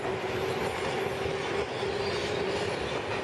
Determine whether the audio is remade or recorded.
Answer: recorded